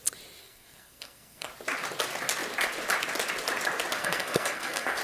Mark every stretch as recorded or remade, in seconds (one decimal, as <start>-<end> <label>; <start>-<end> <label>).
0.0-0.4 recorded; 0.4-1.5 remade; 1.5-4.0 recorded; 4.0-5.0 remade